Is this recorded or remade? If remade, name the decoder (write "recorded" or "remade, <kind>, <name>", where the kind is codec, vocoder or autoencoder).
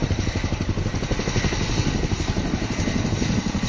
recorded